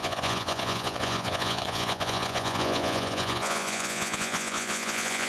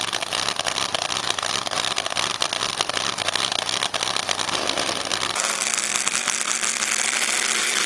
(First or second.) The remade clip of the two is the first